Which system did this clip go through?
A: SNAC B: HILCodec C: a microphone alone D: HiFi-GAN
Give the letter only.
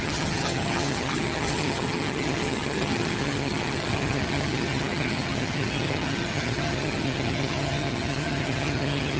D